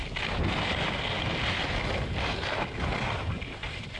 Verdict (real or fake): real